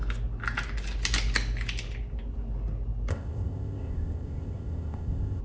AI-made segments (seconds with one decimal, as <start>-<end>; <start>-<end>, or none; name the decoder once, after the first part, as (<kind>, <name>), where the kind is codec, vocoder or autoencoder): 3.1-5.4 (codec, ZipCodec)